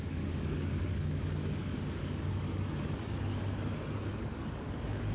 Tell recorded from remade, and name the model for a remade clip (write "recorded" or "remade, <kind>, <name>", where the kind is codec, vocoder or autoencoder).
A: remade, codec, DAC